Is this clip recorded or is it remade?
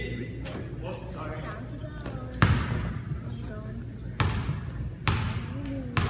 recorded